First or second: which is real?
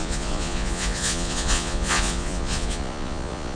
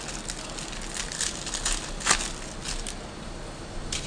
second